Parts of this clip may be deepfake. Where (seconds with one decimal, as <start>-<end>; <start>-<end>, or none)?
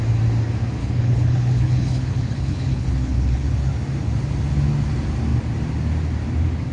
0.8-3.5